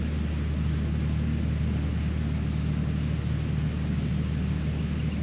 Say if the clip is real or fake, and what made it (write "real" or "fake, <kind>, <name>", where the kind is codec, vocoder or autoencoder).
real